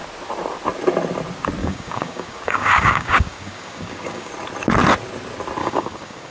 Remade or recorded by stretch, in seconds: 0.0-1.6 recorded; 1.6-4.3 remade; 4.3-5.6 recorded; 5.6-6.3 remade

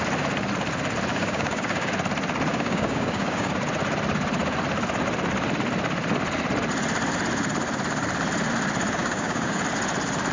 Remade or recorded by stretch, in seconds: 0.0-1.1 recorded; 1.1-1.9 remade; 1.9-2.5 recorded; 2.5-3.5 remade; 3.5-9.0 recorded; 9.0-9.6 remade; 9.6-10.3 recorded

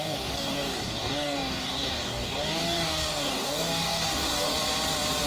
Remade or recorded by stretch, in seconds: 0.0-4.5 remade; 4.5-5.3 recorded

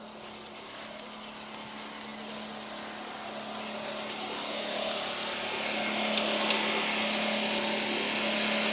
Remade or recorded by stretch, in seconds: 0.0-8.7 recorded

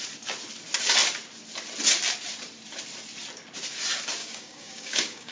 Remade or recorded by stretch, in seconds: 0.0-4.2 recorded; 4.2-5.3 remade

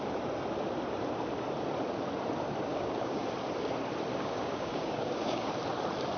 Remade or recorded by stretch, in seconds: 0.0-2.7 recorded; 2.7-3.2 remade; 3.2-4.1 recorded; 4.1-5.5 remade; 5.5-6.2 recorded